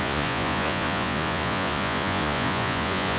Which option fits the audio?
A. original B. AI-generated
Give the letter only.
B